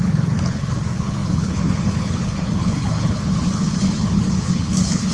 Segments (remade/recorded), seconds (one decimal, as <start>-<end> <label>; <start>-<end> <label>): 0.0-5.1 remade

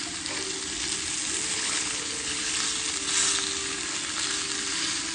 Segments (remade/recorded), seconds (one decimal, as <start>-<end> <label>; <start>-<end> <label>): 0.0-1.5 recorded; 1.5-2.5 remade; 2.5-5.1 recorded

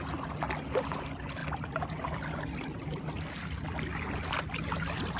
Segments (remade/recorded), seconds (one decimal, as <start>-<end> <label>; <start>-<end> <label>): 0.0-5.2 recorded